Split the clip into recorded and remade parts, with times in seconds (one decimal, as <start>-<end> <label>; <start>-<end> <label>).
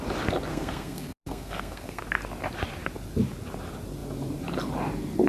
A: 0.0-0.5 recorded; 0.5-2.0 remade; 2.0-5.3 recorded